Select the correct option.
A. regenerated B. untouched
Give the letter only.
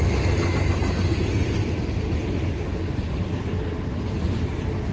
B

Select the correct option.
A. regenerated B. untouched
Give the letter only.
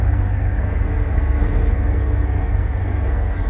A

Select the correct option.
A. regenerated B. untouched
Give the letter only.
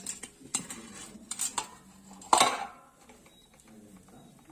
B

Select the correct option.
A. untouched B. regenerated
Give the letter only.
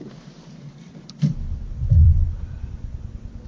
B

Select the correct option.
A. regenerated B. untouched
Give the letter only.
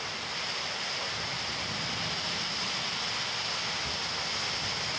B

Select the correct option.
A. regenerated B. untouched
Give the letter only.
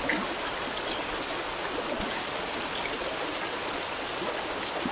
B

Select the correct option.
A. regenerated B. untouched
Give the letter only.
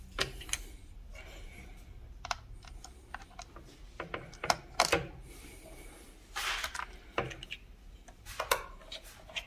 B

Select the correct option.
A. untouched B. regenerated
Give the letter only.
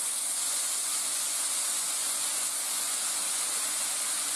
B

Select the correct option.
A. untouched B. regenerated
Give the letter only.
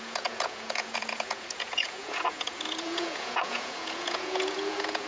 B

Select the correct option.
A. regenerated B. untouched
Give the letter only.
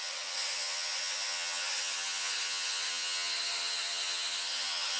A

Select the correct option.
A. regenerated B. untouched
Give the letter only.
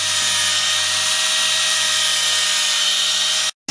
B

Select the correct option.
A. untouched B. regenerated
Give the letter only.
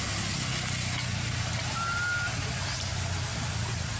A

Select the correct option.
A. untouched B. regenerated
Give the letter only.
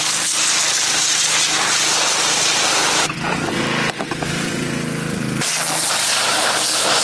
A